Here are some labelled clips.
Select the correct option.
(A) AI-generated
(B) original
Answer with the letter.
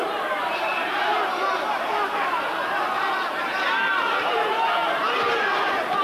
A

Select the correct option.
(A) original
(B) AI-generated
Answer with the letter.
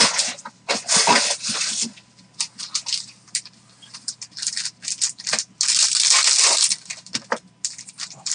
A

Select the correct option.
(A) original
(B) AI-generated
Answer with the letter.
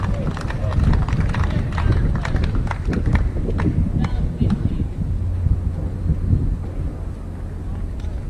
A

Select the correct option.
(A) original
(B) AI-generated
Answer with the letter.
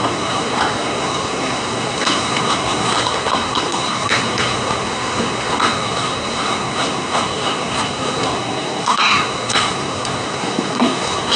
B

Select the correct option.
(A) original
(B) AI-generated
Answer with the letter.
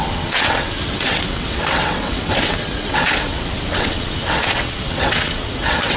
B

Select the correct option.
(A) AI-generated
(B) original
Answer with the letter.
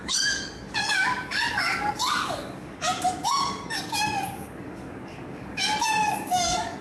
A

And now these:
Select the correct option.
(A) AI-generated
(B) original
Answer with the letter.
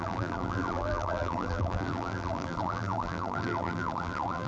A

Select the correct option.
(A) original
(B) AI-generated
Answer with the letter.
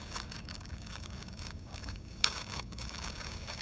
B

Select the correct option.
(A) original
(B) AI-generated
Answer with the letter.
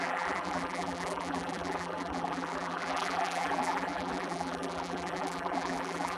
B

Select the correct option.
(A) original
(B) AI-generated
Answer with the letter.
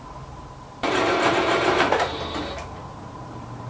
B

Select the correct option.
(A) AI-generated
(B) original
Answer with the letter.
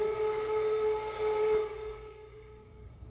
A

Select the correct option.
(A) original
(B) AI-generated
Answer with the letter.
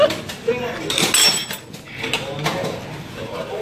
A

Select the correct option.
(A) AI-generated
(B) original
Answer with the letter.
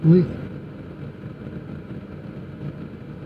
B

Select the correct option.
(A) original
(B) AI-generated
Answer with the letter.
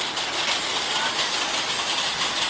A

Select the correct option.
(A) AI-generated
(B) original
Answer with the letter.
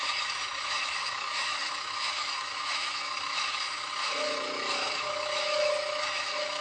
A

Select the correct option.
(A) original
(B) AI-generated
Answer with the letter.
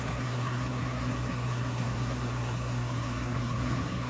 B